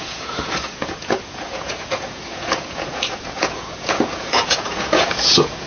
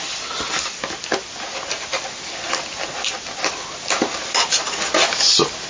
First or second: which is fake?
first